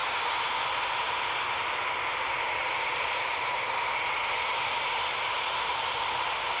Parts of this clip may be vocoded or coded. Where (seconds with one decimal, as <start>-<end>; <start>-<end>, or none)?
none